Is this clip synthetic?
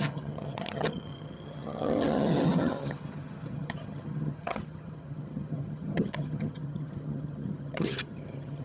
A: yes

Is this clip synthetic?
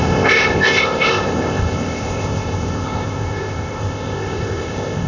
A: yes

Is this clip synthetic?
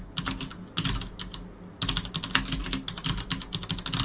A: no